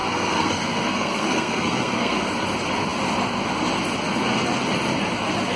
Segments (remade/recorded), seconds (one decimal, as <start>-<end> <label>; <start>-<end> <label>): 0.0-2.2 remade; 2.2-5.6 recorded